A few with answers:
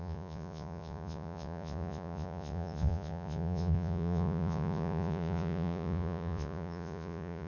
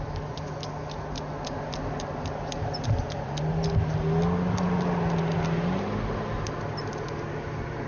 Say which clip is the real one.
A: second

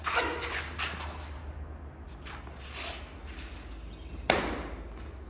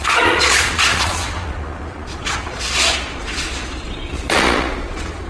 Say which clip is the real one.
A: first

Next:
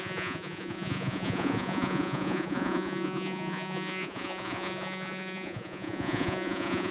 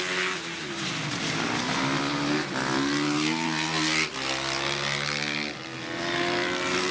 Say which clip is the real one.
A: second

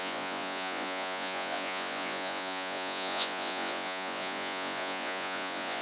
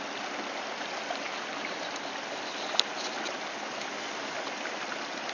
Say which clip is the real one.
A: second